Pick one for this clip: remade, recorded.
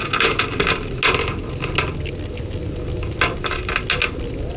recorded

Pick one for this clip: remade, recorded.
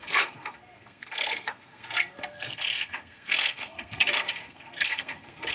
remade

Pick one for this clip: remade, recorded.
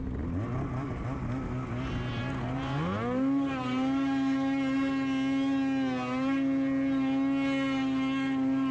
recorded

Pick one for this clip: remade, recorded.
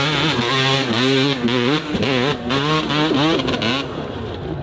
recorded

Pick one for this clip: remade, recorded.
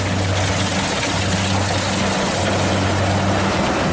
recorded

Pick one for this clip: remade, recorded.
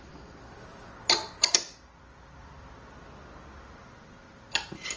recorded